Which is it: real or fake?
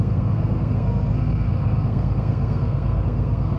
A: fake